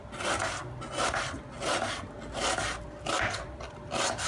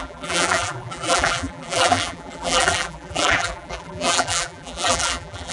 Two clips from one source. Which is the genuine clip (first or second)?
first